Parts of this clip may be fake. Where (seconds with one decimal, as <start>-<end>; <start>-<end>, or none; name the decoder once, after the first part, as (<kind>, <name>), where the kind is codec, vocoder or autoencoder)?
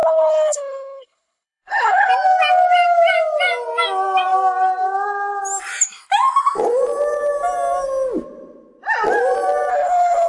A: 0.0-2.1 (codec, HILCodec); 9.7-10.3